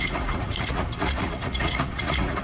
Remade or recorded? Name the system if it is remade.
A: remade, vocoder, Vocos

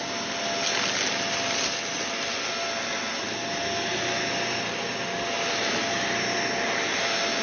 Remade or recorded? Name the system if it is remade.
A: recorded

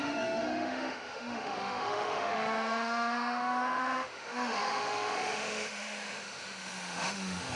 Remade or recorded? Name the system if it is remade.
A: remade, autoencoder, DAC-VAE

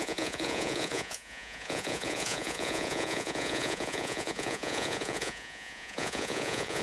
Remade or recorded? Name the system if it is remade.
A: remade, vocoder, Vocos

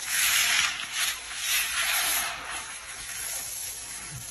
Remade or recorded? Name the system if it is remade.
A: remade, autoencoder, DAC-VAE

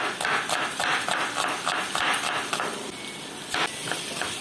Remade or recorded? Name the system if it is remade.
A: recorded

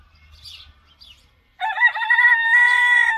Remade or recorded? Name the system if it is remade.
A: remade, vocoder, BigVGAN v2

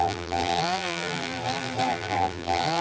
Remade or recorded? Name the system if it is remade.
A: remade, vocoder, BigVGAN v2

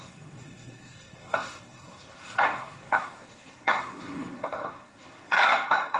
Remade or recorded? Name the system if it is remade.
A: remade, codec, SNAC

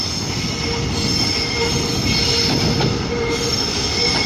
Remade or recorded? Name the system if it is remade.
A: recorded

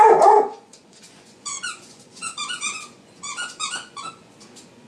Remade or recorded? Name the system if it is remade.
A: remade, vocoder, Vocos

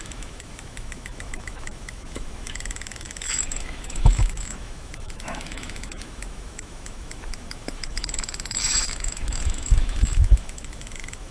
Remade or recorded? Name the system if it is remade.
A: remade, autoencoder, DAC-VAE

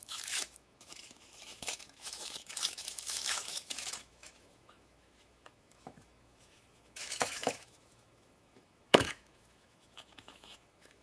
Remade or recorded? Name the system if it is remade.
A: remade, autoencoder, DAC-VAE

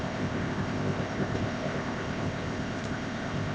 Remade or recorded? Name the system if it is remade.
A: remade, codec, ZipCodec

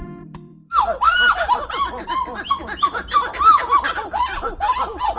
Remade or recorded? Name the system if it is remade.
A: remade, vocoder, BigVGAN v2